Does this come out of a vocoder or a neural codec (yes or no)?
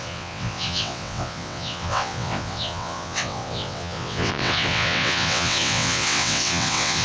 yes